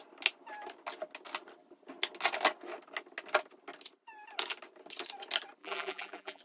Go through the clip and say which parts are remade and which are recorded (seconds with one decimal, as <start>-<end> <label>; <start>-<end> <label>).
0.0-5.6 recorded; 5.6-6.4 remade